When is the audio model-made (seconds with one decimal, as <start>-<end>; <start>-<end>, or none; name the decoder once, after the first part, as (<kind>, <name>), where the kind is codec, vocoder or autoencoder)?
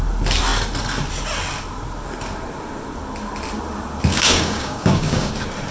4.1-5.3 (codec, DAC)